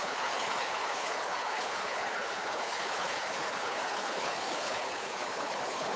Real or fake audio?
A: fake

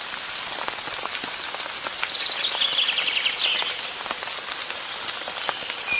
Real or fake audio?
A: real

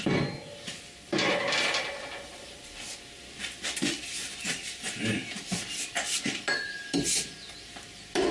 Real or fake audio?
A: real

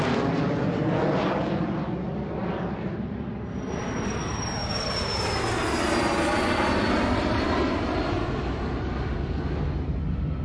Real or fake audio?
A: real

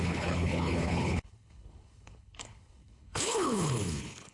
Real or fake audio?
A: fake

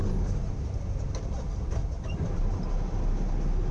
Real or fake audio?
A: real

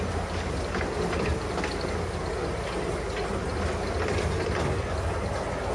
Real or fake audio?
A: real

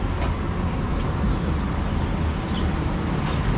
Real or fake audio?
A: real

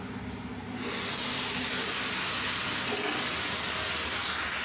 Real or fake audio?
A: real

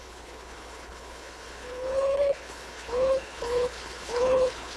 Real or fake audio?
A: fake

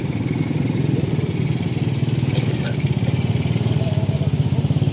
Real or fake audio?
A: real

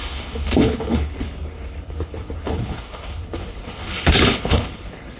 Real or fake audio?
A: fake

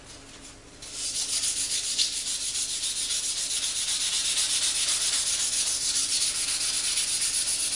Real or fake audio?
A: real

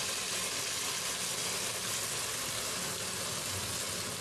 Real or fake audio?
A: real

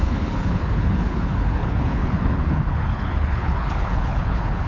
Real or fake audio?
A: fake